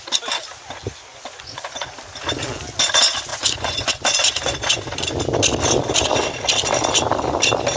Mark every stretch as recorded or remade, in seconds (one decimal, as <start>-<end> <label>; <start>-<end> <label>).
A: 0.0-1.1 recorded; 1.1-1.9 remade; 1.9-3.3 recorded; 3.3-3.9 remade; 3.9-4.3 recorded; 4.3-4.8 remade; 4.8-7.8 recorded